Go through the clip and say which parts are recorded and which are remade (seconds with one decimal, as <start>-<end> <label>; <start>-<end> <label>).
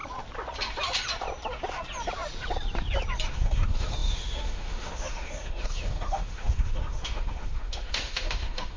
0.0-3.3 recorded; 3.3-8.8 remade